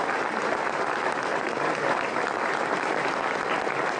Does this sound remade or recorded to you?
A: recorded